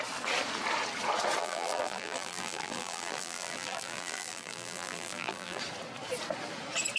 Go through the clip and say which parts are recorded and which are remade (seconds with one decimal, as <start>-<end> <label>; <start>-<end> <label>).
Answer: 0.0-1.4 recorded; 1.4-5.6 remade; 5.6-7.0 recorded